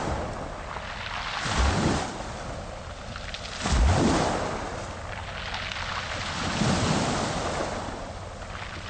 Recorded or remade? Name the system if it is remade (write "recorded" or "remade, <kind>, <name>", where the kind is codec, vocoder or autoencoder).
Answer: recorded